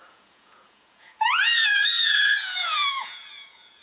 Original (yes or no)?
no